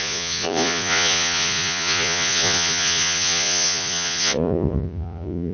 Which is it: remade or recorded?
remade